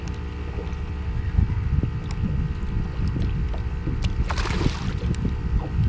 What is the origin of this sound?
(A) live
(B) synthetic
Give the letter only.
A